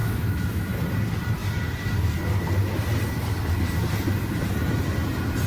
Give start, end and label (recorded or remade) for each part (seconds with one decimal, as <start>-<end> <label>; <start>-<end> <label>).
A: 0.0-0.8 remade; 0.8-5.5 recorded

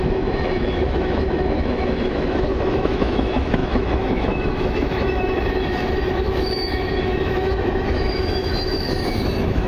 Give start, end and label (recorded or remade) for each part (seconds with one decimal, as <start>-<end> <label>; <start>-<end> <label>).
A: 0.0-9.7 remade

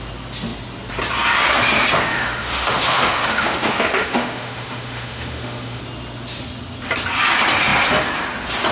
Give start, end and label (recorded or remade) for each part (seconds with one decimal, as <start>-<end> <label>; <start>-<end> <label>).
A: 0.0-2.1 recorded; 2.1-5.8 remade; 5.8-8.7 recorded